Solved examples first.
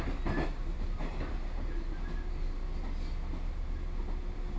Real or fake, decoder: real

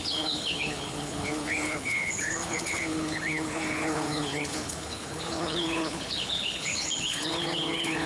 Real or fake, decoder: fake, codec, HILCodec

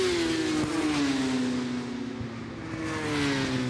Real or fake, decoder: real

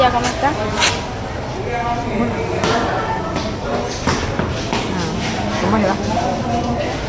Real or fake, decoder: real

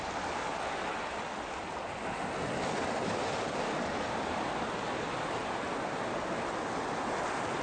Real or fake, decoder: real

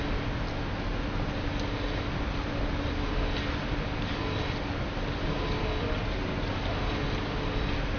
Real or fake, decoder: real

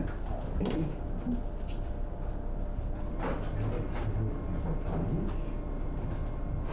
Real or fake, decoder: real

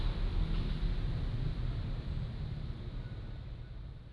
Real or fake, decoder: real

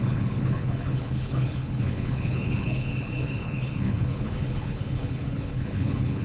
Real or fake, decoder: fake, codec, HILCodec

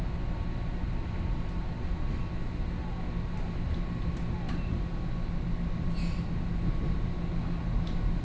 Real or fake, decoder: real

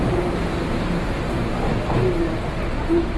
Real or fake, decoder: real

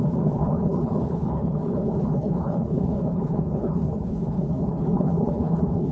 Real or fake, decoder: fake, codec, HILCodec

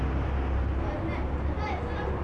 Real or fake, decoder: real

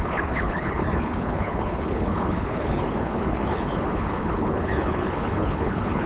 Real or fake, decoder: fake, codec, HILCodec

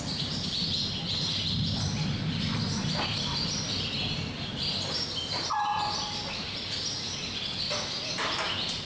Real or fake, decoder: real